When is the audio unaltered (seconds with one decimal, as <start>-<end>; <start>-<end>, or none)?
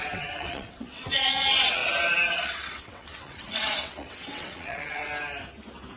1.8-2.3; 5.0-6.0